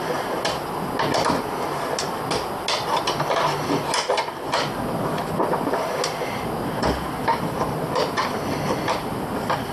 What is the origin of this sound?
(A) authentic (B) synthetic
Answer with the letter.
A